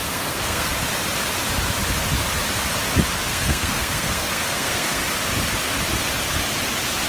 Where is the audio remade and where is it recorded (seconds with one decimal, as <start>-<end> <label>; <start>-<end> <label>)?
0.0-0.7 remade; 0.7-3.3 recorded; 3.3-5.0 remade; 5.0-7.1 recorded